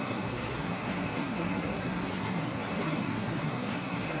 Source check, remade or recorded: remade